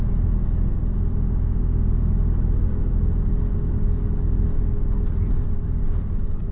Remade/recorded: recorded